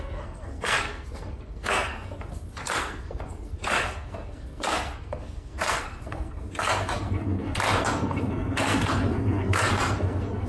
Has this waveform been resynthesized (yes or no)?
yes